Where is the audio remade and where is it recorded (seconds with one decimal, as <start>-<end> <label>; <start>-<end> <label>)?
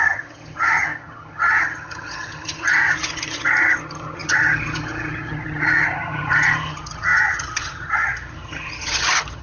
0.0-9.4 remade